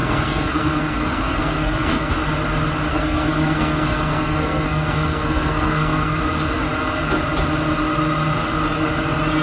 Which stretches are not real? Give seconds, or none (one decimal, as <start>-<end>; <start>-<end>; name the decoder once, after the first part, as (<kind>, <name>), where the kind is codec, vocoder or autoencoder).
0.0-2.1 (codec, SNAC); 2.9-6.2